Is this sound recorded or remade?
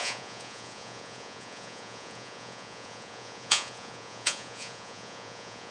remade